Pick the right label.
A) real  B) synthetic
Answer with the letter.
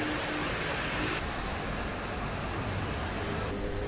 A